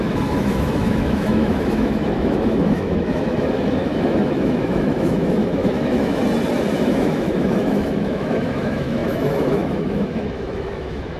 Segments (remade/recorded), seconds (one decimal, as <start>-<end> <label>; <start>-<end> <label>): 0.0-6.2 remade; 6.2-6.7 recorded; 6.7-11.2 remade